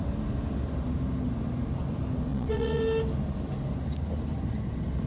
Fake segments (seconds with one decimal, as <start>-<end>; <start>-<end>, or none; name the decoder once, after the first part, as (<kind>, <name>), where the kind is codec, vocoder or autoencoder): 2.3-2.8 (vocoder, Vocos)